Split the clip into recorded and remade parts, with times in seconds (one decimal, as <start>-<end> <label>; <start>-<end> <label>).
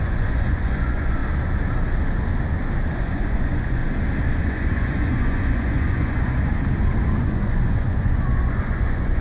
0.0-1.2 remade; 1.2-2.9 recorded; 2.9-3.8 remade; 3.8-4.4 recorded; 4.4-6.5 remade; 6.5-7.2 recorded; 7.2-9.2 remade